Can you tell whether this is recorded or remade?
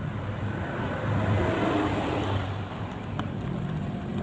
recorded